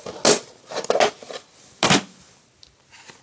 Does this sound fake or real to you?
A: real